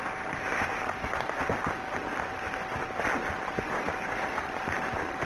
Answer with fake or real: fake